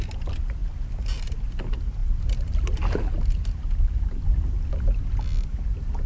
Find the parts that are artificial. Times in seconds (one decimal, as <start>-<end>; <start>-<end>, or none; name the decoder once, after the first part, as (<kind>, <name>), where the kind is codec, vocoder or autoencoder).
none